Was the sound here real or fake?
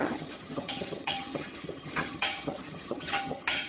fake